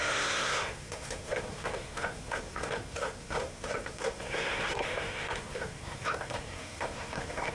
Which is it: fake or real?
fake